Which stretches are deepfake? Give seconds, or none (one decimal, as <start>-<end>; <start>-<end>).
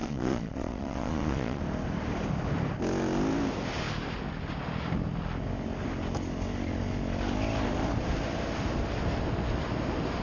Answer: 0.0-1.6